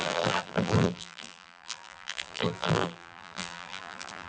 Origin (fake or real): fake